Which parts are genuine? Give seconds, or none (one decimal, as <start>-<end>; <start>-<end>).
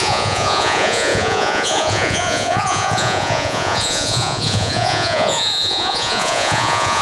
none